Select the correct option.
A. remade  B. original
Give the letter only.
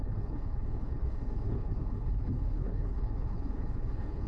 A